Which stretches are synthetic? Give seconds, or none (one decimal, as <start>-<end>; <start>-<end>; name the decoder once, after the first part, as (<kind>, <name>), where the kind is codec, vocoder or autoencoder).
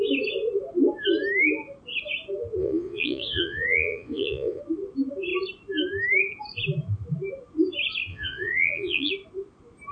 2.6-4.6 (vocoder, Vocos); 8.1-9.1